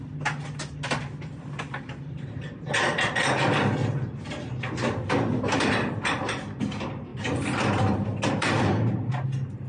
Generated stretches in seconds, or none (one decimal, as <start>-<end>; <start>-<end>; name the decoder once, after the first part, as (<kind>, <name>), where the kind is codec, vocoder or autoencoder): 7.1-9.1 (vocoder, BigVGAN v2)